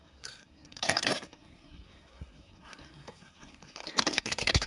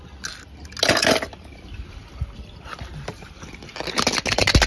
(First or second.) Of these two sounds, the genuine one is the second